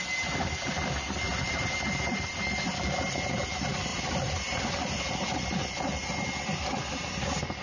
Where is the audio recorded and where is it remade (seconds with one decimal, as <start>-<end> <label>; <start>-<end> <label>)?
0.0-1.3 recorded; 1.3-2.3 remade; 2.3-3.9 recorded; 3.9-5.4 remade; 5.4-7.6 recorded